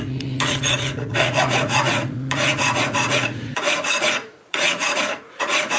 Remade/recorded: remade